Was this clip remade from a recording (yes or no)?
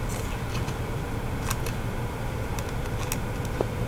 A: no